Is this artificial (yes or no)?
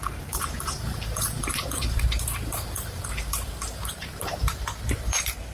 yes